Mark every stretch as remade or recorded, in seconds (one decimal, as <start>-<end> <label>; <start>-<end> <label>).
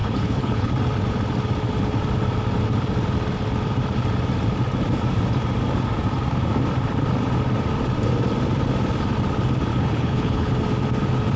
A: 0.0-0.7 remade; 0.7-9.7 recorded; 9.7-10.5 remade; 10.5-11.4 recorded